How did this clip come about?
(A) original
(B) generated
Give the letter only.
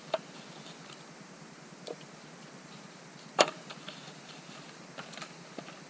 A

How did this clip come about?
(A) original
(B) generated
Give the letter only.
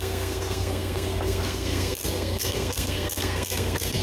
B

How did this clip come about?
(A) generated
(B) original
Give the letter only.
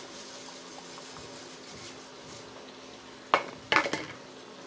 B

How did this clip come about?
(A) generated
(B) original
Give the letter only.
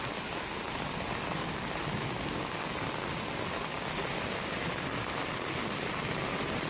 B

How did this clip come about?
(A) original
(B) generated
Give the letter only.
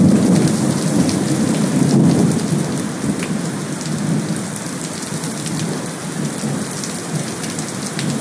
A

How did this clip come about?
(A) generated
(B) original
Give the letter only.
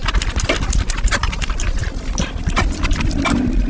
B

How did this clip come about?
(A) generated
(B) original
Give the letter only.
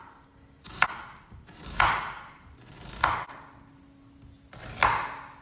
B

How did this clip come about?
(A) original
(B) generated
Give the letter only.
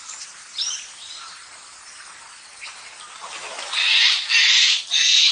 A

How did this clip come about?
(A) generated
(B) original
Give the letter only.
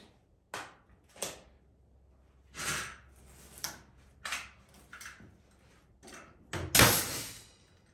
B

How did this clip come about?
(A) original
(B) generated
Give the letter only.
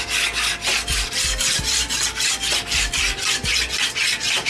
A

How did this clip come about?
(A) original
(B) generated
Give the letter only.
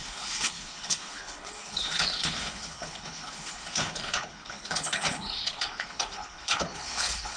B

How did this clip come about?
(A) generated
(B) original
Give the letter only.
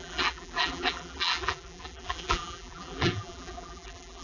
A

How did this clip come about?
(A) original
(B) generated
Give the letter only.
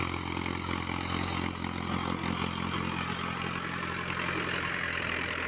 A